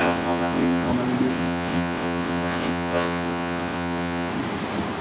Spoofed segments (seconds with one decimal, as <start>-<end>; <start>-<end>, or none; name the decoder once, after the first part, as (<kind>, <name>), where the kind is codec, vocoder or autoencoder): 0.0-0.9 (vocoder, WaveNeXt); 1.3-4.3